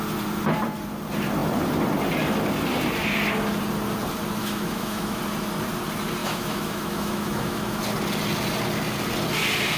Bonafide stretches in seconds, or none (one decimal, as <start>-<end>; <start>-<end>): 0.0-4.4; 5.2-6.2; 7.8-9.8